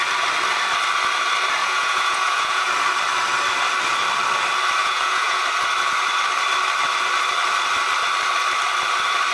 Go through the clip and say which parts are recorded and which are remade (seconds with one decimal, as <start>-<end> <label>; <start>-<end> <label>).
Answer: 0.0-1.6 recorded; 1.6-2.7 remade; 2.7-4.8 recorded; 4.8-5.4 remade; 5.4-9.3 recorded